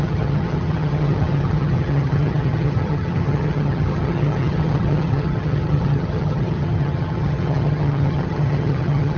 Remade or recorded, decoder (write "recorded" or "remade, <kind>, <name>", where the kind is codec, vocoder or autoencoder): remade, vocoder, HiFi-GAN